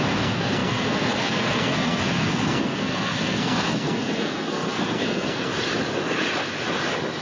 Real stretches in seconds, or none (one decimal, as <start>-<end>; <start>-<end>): 5.5-7.2